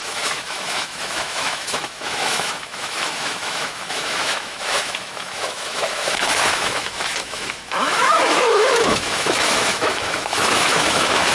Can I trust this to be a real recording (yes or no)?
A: no